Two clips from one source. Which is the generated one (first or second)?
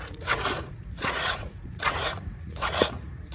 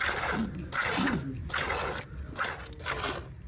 first